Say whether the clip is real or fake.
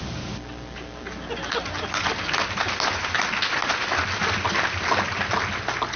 real